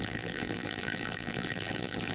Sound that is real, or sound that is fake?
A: fake